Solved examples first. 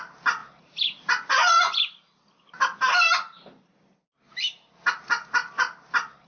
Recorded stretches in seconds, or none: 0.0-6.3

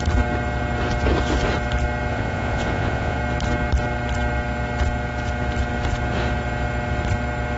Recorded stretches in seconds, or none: 0.0-2.1; 3.2-7.6

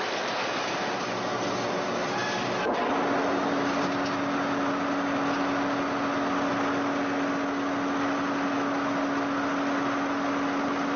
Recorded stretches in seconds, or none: 0.0-11.0

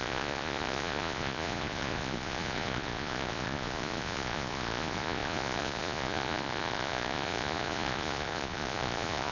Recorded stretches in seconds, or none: none

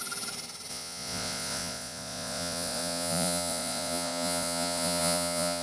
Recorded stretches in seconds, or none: 0.0-0.7

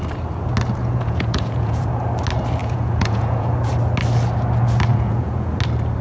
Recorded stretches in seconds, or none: 0.0-0.8; 1.9-2.6; 3.7-4.9; 5.6-6.0